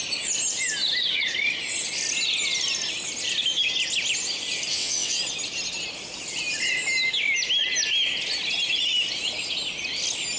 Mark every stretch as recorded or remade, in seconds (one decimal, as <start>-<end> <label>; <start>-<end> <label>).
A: 0.0-4.7 recorded; 4.7-5.2 remade; 5.2-10.4 recorded